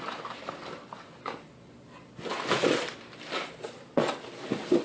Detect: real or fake real